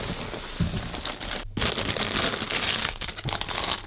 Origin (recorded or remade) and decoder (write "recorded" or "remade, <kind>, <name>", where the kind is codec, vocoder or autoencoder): recorded